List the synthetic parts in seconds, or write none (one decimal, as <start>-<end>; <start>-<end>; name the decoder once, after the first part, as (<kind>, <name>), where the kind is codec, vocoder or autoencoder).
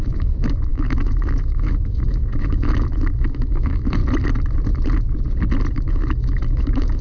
0.0-4.0 (autoencoder, DAC-VAE); 5.7-7.0